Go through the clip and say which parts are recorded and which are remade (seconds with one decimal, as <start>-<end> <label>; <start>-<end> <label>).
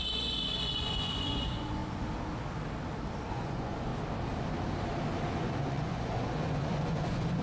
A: 0.0-1.8 remade; 1.8-3.3 recorded; 3.3-3.9 remade; 3.9-5.3 recorded; 5.3-7.4 remade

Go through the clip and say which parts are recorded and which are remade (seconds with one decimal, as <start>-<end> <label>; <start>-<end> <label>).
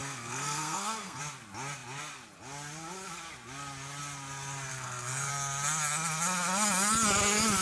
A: 0.0-1.2 remade; 1.2-4.7 recorded; 4.7-5.3 remade; 5.3-7.6 recorded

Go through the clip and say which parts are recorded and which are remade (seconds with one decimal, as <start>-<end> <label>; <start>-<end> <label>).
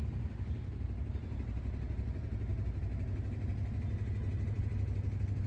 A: 0.0-5.5 recorded